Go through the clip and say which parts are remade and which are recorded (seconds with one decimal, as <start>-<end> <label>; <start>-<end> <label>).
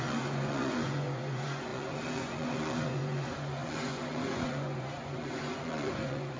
0.0-6.4 remade